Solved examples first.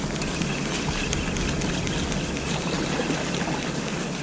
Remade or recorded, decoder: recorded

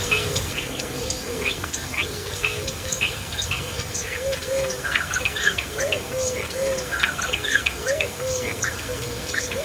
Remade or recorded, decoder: remade, codec, SNAC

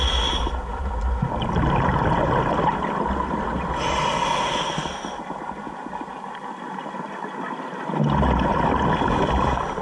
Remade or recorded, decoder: recorded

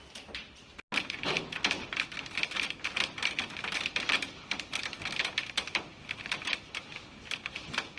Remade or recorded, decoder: recorded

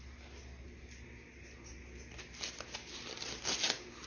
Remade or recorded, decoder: recorded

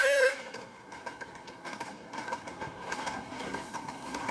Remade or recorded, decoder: remade, codec, SNAC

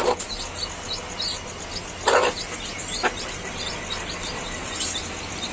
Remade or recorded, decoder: recorded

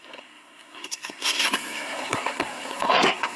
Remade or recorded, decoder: remade, codec, SNAC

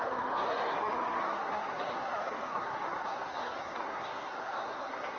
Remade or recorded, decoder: remade, codec, SNAC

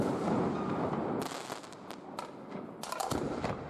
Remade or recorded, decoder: recorded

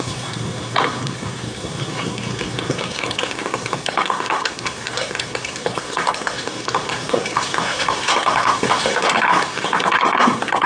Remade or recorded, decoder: remade, codec, SNAC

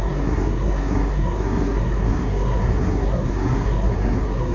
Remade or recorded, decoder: remade, codec, SNAC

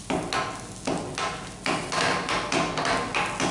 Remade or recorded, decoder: recorded